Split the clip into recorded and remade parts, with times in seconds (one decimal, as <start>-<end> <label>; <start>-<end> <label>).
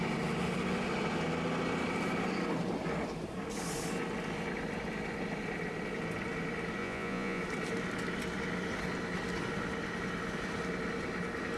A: 0.0-6.8 recorded; 6.8-7.4 remade; 7.4-11.6 recorded